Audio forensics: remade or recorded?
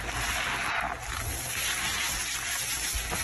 recorded